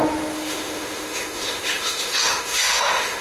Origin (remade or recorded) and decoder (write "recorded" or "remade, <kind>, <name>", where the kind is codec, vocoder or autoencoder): remade, autoencoder, DAC-VAE